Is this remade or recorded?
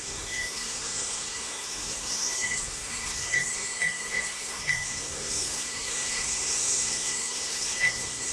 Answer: remade